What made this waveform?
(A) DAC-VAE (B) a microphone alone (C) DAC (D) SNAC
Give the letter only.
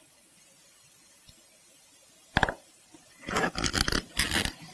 B